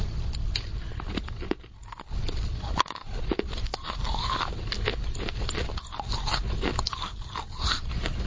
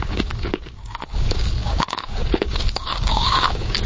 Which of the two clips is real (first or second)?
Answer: first